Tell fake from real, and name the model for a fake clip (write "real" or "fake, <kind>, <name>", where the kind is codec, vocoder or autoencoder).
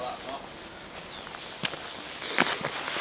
real